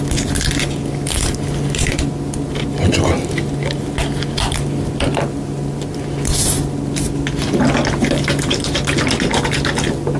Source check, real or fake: real